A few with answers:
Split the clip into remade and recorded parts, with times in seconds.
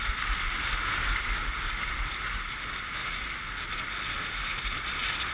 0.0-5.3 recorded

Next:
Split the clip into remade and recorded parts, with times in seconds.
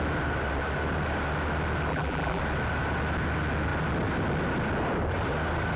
0.0-1.9 recorded; 1.9-2.4 remade; 2.4-5.8 recorded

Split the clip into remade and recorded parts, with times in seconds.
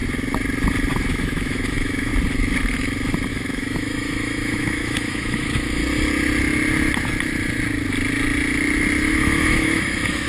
0.0-1.1 recorded; 1.1-2.1 remade; 2.1-3.3 recorded; 3.3-5.8 remade; 5.8-9.1 recorded; 9.1-10.3 remade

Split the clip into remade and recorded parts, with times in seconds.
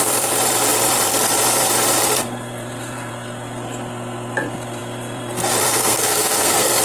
0.0-5.7 recorded; 5.7-6.8 remade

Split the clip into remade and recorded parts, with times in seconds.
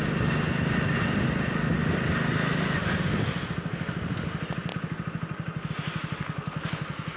0.0-7.2 recorded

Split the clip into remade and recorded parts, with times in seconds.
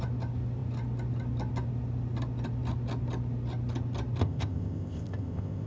0.0-4.2 recorded; 4.2-5.7 remade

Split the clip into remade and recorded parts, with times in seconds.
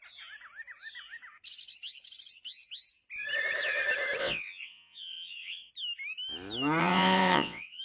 0.0-4.2 recorded; 4.2-5.7 remade; 5.7-6.8 recorded; 6.8-7.8 remade